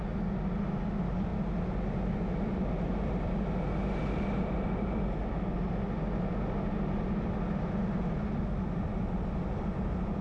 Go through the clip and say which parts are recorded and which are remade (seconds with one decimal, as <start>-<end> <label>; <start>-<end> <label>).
0.0-10.2 recorded